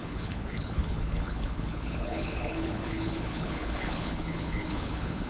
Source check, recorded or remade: remade